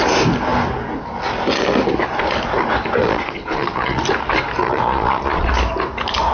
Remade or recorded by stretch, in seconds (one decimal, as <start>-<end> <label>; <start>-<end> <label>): 0.0-3.0 recorded; 3.0-4.0 remade; 4.0-4.6 recorded; 4.6-5.5 remade; 5.5-6.3 recorded